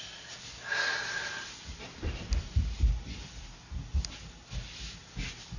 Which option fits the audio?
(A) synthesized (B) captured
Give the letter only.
B